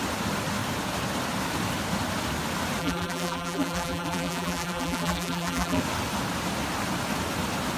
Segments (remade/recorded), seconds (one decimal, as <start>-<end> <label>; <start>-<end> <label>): 0.0-2.8 recorded; 2.8-5.8 remade; 5.8-7.8 recorded